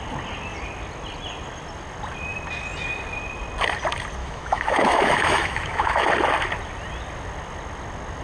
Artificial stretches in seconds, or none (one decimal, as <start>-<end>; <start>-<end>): 4.2-6.1

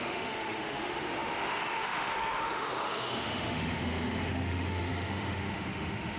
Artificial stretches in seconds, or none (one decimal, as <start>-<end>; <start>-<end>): 0.0-6.2